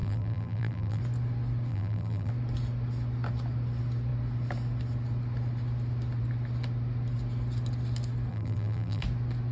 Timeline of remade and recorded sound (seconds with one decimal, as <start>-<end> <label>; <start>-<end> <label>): 0.0-1.0 remade; 1.0-1.7 recorded; 1.7-2.3 remade; 2.3-8.3 recorded; 8.3-9.0 remade; 9.0-9.5 recorded